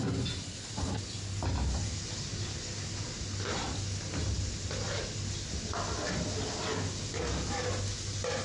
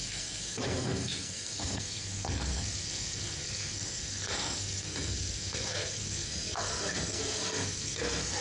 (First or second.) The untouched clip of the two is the first